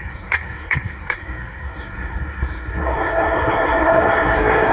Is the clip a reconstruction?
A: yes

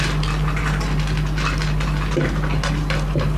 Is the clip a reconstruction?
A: no